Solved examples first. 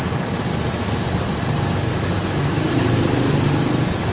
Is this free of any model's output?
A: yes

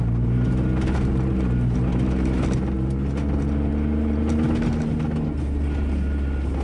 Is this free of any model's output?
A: yes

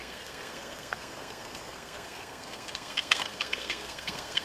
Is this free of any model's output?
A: no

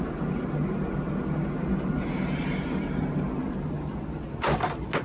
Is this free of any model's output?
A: yes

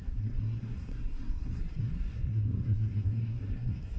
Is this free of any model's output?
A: no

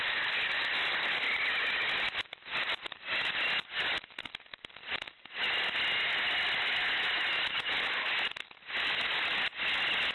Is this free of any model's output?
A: yes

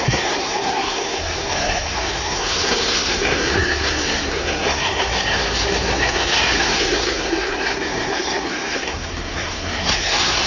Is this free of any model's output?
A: no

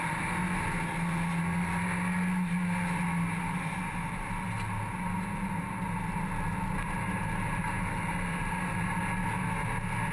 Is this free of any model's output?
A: yes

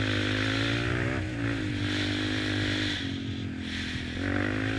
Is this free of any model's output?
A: yes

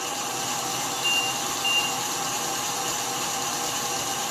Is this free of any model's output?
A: yes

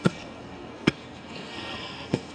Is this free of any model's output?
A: no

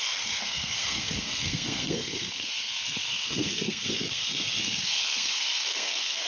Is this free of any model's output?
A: no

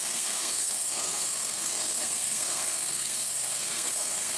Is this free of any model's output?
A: no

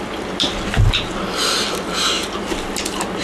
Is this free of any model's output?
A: yes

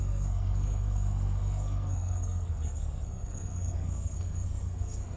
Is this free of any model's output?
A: no